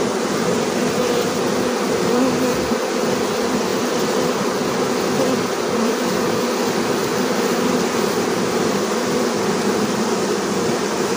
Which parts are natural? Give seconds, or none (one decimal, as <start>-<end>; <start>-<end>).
0.0-11.2